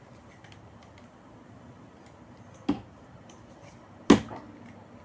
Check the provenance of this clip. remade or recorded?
recorded